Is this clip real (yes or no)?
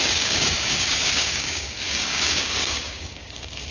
no